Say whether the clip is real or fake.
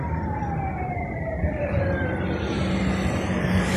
fake